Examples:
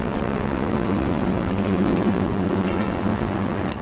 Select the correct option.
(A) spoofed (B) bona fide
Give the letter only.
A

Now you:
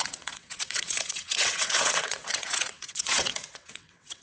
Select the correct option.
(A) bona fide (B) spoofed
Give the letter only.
B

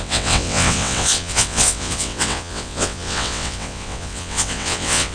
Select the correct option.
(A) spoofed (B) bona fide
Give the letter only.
A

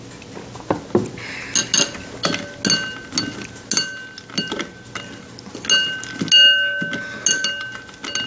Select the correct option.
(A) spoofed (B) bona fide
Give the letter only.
B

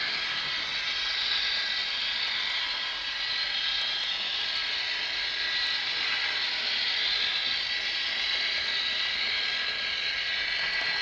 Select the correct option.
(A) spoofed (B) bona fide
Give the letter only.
B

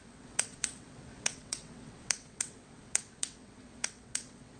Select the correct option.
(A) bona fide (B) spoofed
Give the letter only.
B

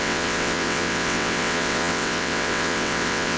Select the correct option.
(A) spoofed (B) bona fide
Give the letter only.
A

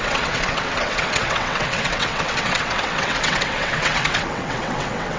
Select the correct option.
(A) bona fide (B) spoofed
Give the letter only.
B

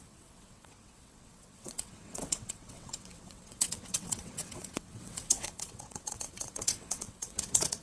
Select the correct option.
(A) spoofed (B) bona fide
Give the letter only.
A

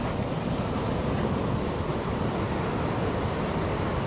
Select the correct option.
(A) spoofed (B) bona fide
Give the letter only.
B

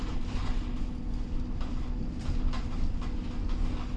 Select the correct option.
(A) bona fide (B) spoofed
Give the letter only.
A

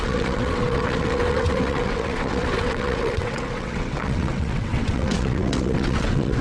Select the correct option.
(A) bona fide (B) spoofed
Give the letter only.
B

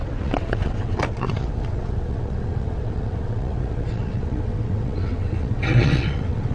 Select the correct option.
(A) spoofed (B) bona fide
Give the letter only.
A